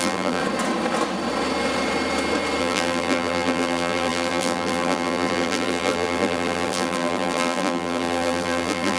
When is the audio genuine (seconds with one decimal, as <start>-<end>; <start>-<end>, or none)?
0.4-2.6